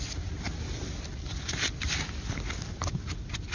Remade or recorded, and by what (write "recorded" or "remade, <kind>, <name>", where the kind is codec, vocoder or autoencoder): recorded